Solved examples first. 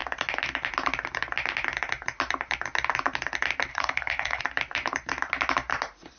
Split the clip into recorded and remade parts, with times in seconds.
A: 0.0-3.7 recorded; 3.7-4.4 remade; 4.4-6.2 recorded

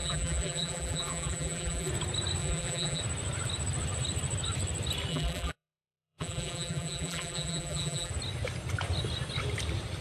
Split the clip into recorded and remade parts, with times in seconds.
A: 0.0-1.9 remade; 1.9-2.4 recorded; 2.4-3.0 remade; 3.0-5.1 recorded; 5.1-8.1 remade; 8.1-10.0 recorded

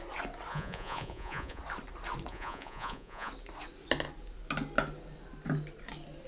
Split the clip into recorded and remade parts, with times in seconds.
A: 0.0-0.5 recorded; 0.5-1.6 remade; 1.6-2.3 recorded; 2.3-3.3 remade; 3.3-6.3 recorded

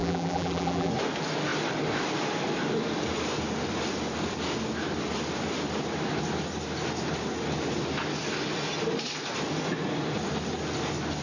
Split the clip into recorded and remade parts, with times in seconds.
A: 0.0-0.9 remade; 0.9-11.2 recorded

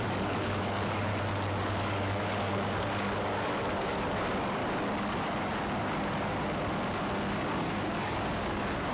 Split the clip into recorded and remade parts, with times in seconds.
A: 0.0-1.1 remade; 1.1-1.6 recorded; 1.6-4.6 remade; 4.6-7.3 recorded; 7.3-8.9 remade

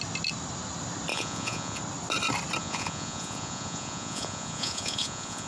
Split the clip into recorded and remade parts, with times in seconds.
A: 0.0-1.1 recorded; 1.1-1.8 remade; 1.8-2.6 recorded; 2.6-5.5 remade